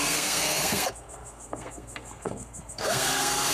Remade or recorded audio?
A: remade